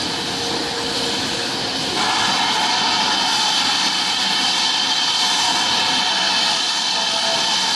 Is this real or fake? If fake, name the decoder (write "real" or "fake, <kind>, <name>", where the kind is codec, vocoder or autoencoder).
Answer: real